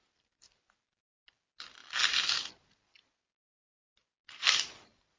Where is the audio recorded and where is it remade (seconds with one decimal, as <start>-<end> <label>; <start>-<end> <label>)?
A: 0.0-5.2 recorded